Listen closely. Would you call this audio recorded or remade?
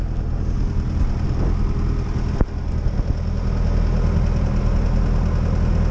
recorded